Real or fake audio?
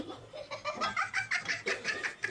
fake